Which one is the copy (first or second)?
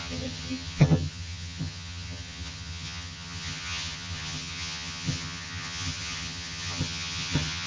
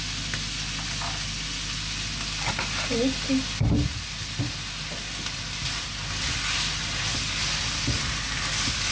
first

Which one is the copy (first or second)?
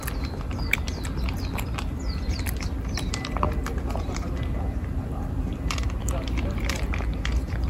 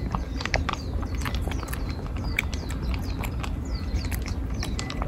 second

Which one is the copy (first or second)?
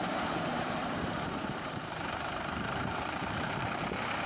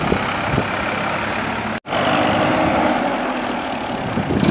first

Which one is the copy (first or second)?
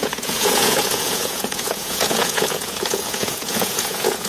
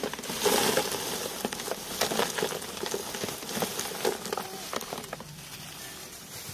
first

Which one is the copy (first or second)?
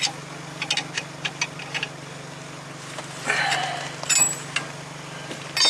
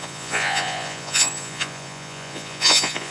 second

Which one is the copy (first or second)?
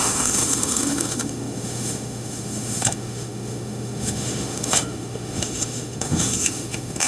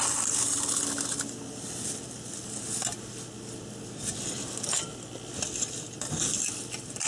first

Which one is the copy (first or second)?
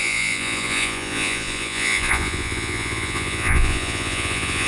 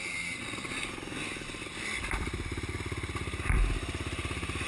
first